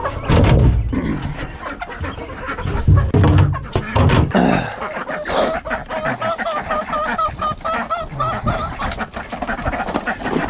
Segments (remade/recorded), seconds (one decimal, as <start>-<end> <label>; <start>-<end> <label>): 0.0-10.5 recorded

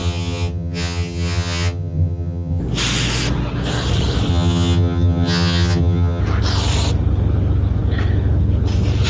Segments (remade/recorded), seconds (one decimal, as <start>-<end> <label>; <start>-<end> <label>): 0.0-2.6 remade; 2.6-4.3 recorded; 4.3-6.2 remade; 6.2-9.1 recorded